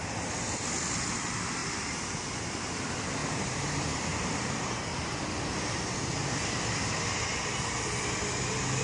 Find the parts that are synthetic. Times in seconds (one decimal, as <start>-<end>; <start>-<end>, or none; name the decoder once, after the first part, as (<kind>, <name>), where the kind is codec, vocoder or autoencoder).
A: 1.6-2.6 (vocoder, BigVGAN v2); 3.2-5.2